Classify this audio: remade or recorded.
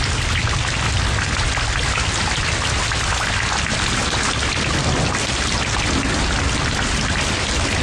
recorded